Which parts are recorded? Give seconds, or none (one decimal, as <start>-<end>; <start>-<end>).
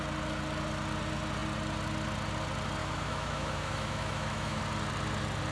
0.0-2.8; 4.6-5.5